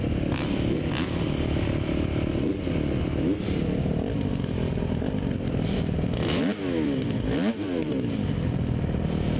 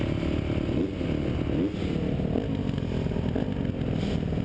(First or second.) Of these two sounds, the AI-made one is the first